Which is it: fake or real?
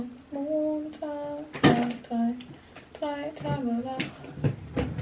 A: real